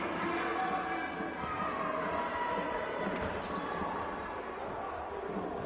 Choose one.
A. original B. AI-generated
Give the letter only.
A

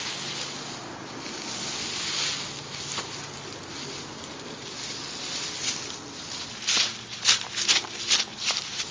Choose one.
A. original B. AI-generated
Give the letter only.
A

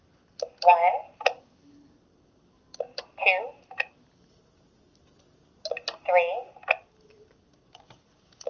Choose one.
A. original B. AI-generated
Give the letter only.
A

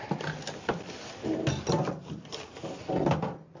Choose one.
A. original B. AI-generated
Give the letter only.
A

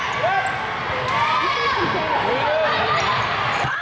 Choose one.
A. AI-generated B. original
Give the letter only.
B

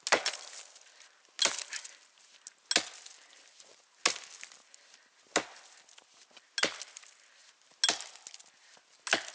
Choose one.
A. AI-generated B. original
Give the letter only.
B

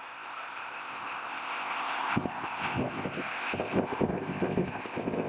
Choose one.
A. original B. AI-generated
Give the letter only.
B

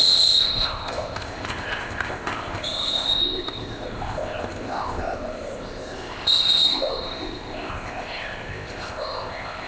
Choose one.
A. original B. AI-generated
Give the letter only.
B